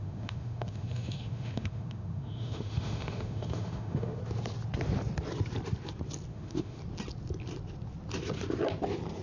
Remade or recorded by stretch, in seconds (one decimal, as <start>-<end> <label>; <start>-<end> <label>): 0.0-4.2 remade; 4.2-6.3 recorded; 6.3-6.8 remade; 6.8-9.2 recorded